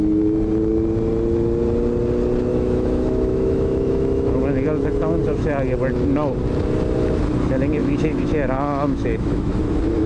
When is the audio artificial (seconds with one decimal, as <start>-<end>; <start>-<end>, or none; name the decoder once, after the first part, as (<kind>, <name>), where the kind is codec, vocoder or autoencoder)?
2.5-5.2 (autoencoder, DAC-VAE); 7.8-9.6